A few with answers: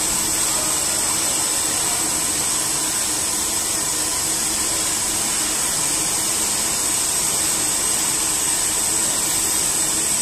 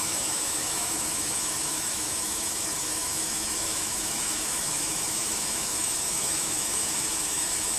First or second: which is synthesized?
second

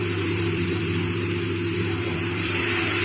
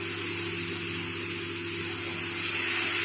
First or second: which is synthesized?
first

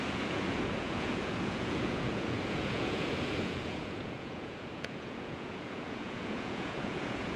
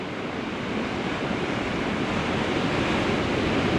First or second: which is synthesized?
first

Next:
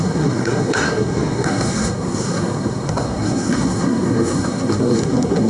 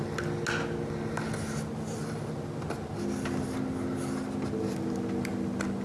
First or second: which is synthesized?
first